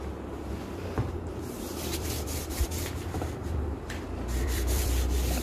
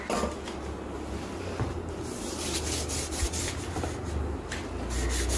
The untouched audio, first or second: second